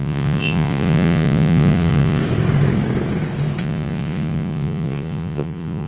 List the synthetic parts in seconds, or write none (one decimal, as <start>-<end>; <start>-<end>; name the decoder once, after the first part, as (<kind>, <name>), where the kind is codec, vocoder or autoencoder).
0.0-2.2 (vocoder, Vocos); 3.6-5.9